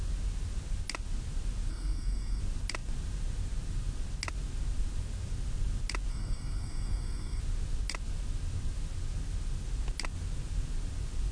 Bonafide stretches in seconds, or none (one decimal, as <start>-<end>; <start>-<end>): 0.0-1.7; 2.4-6.1; 7.4-11.3